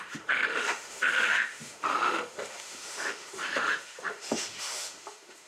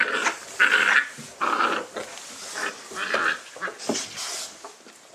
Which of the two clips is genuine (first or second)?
second